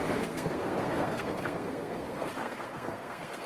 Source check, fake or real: fake